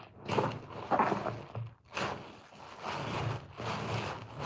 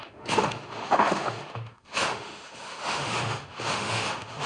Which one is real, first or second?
first